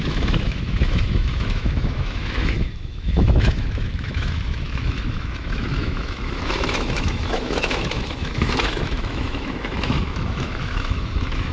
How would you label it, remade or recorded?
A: remade